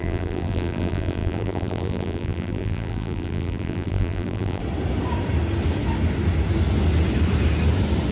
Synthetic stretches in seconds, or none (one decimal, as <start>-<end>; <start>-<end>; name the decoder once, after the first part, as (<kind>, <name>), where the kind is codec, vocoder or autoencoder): 0.0-4.6 (vocoder, BigVGAN v2)